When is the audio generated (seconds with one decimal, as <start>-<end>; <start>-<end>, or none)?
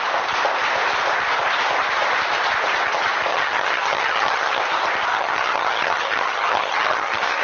3.3-4.6; 5.1-7.4